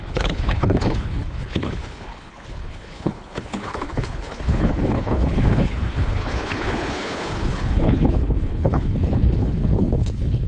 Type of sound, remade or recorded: remade